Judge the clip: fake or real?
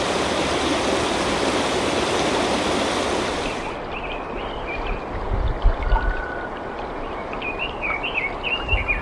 real